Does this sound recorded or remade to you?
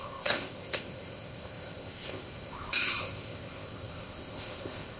remade